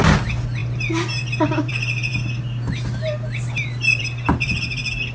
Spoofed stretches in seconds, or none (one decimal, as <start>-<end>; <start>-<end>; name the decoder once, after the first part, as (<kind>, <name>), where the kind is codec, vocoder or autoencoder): none